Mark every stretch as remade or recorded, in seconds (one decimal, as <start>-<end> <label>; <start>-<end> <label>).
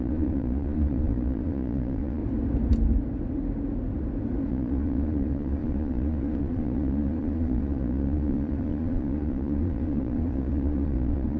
0.0-2.2 remade; 2.2-4.5 recorded; 4.5-11.4 remade